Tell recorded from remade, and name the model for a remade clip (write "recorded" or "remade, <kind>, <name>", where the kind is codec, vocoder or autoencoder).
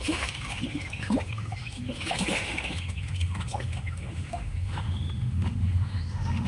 remade, autoencoder, DAC-VAE